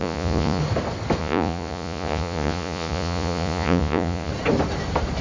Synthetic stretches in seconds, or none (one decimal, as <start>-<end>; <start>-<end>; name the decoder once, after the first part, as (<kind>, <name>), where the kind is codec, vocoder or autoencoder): 0.0-0.6 (vocoder, Vocos); 1.2-4.3